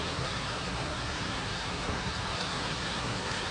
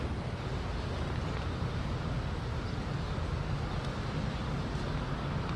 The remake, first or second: first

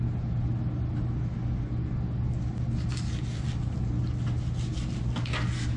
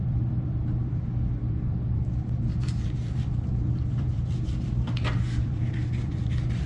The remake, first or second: second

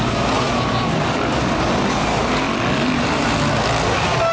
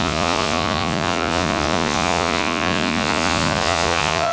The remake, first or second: second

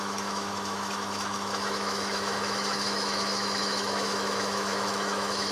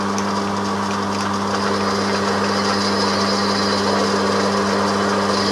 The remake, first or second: first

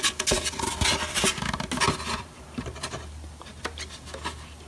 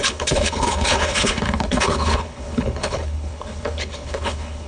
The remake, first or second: second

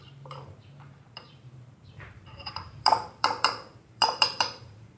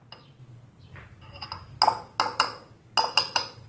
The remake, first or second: first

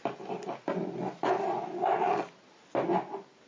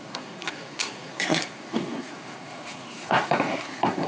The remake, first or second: second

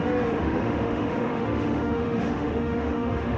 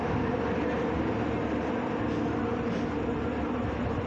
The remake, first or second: first